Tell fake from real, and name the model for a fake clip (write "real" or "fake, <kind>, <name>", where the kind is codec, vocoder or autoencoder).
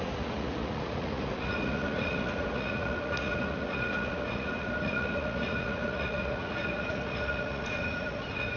fake, vocoder, Vocos